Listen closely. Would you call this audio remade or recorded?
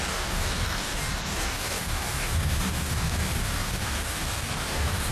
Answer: remade